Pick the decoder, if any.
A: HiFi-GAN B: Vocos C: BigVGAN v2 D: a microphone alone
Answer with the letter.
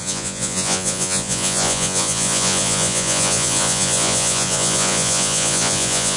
B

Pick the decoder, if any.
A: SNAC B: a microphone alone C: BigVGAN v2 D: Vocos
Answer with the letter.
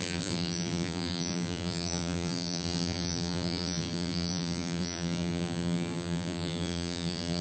C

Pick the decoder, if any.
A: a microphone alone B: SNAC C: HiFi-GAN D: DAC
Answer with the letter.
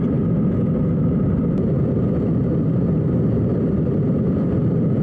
A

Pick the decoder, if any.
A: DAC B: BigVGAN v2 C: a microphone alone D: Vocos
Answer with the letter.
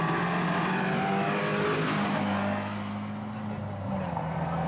C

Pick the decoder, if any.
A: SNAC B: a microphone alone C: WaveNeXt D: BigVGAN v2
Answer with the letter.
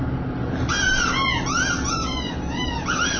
B